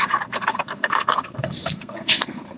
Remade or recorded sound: remade